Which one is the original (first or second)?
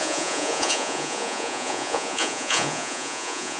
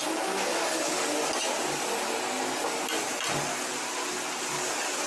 second